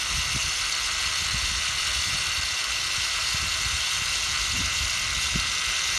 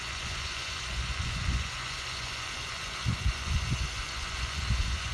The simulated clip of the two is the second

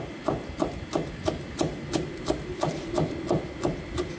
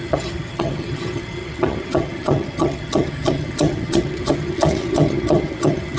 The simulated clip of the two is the second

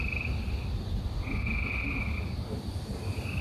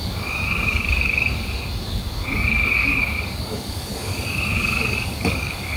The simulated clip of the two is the second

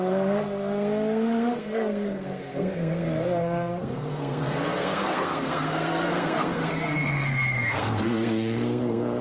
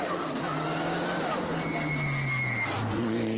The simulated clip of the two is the first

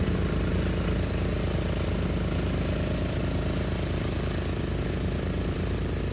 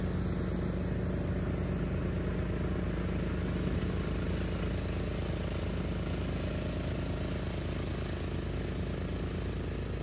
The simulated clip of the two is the first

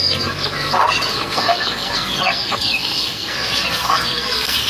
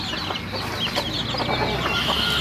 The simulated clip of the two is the first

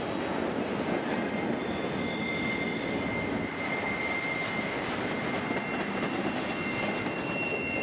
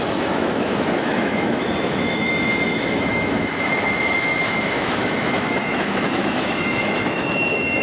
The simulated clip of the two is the second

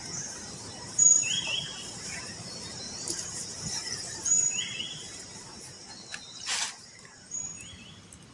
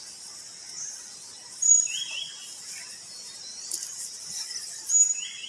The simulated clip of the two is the first